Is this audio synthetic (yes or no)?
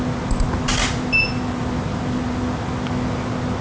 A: no